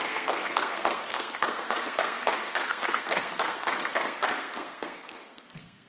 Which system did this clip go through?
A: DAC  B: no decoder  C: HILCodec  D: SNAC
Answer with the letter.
D